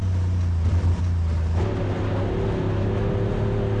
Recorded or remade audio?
recorded